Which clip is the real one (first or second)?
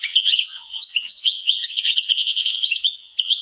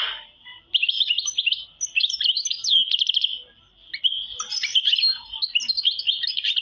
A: second